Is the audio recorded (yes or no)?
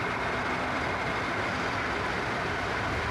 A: yes